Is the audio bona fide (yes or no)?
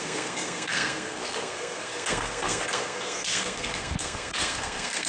no